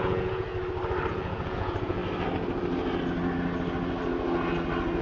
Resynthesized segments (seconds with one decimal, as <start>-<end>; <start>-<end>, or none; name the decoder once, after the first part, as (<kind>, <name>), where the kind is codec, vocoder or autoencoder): 0.0-0.5 (vocoder, Vocos); 1.1-2.0